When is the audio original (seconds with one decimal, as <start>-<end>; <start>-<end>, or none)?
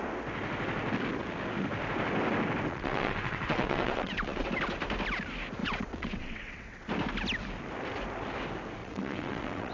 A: 0.0-2.7; 4.5-5.6; 6.9-8.8